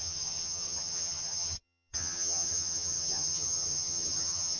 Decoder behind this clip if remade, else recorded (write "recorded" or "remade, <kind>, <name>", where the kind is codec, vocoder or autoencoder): remade, vocoder, HiFi-GAN